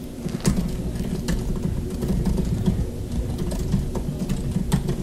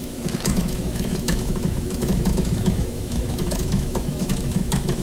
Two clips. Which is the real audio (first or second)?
first